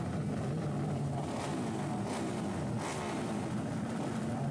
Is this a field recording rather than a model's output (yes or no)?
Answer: yes